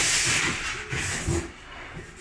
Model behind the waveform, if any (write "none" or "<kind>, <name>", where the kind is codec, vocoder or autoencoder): none